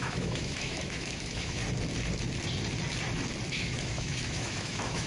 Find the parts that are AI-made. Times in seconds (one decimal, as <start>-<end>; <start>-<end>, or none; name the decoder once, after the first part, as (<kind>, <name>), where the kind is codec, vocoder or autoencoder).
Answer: 0.0-1.6 (autoencoder, DAC-VAE); 3.5-5.1